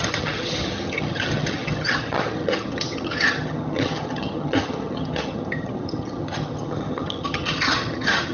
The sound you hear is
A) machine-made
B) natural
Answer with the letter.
A